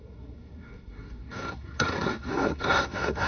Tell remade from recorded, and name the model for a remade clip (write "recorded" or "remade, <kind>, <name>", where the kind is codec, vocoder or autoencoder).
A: remade, codec, SNAC